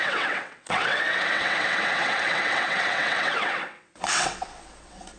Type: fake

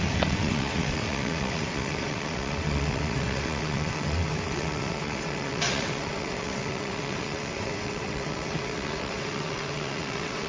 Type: fake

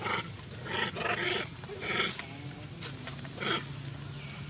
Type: real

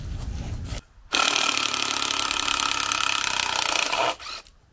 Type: real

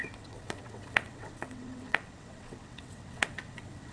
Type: fake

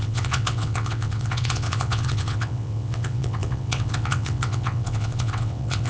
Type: fake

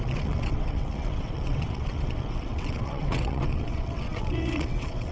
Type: fake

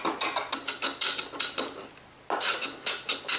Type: real